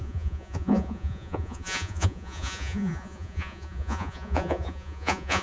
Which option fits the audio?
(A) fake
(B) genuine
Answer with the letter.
A